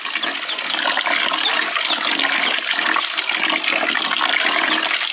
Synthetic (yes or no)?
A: no